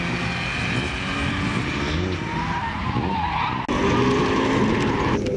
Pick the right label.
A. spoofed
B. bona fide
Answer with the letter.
B